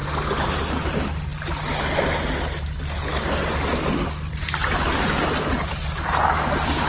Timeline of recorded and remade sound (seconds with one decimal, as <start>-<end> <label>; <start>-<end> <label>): 0.0-6.9 recorded